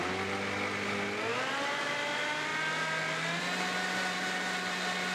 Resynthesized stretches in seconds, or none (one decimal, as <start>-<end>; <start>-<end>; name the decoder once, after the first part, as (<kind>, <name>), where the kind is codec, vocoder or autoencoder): none